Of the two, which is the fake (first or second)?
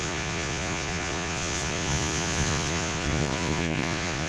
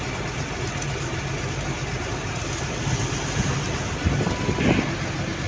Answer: first